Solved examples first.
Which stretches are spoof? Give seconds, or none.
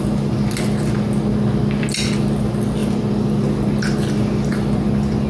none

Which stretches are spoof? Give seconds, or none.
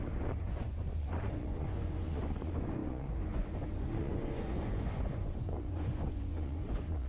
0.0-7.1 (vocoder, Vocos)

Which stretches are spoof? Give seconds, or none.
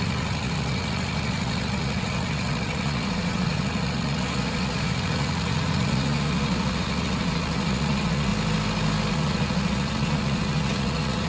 0.0-8.3 (vocoder, Vocos); 9.1-11.3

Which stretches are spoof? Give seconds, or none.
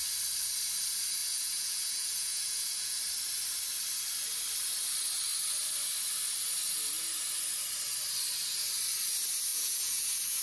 1.2-3.0 (vocoder, Vocos); 9.5-10.4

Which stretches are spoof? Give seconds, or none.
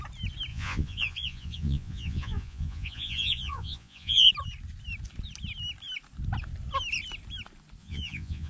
0.5-4.3 (vocoder, Vocos); 7.8-8.5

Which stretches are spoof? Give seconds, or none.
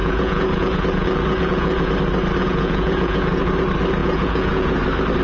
0.0-1.9 (vocoder, Vocos); 2.4-3.5; 4.0-4.7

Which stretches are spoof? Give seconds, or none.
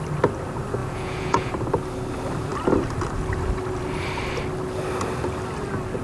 0.8-1.5 (vocoder, Vocos)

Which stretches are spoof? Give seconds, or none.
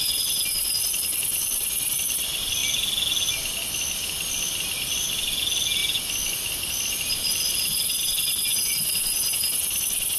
8.5-9.6 (vocoder, Vocos)